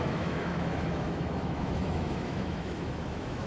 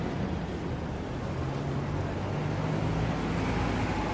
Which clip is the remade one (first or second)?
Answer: first